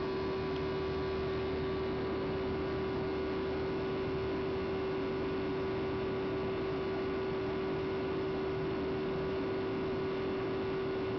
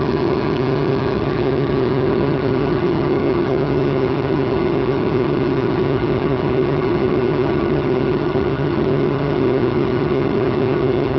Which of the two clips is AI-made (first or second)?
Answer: second